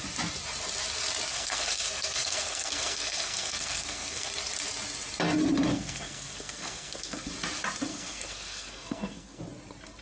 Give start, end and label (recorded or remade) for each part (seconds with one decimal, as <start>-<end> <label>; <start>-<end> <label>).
0.0-1.3 recorded; 1.3-4.3 remade; 4.3-5.7 recorded; 5.7-7.3 remade; 7.3-7.9 recorded; 7.9-9.4 remade; 9.4-10.0 recorded